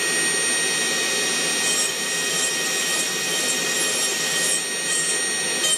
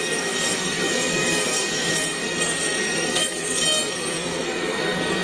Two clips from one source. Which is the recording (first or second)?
first